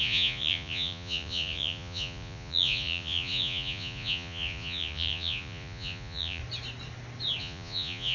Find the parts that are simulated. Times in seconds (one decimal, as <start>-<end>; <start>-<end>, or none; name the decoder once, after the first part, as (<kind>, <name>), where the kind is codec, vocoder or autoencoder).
0.0-6.4 (vocoder, Vocos); 7.4-8.1